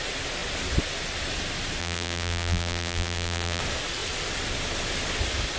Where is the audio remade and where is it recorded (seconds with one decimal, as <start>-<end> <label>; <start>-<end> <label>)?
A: 0.0-1.8 recorded; 1.8-3.6 remade; 3.6-5.6 recorded